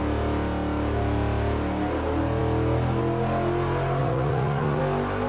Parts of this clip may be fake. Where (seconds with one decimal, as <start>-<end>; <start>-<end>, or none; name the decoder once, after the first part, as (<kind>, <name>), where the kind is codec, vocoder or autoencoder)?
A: 4.0-4.8 (vocoder, Vocos)